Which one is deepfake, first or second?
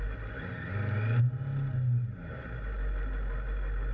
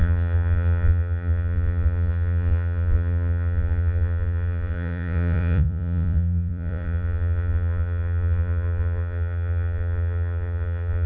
second